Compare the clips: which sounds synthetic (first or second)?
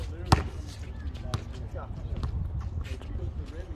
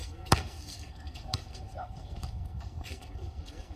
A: second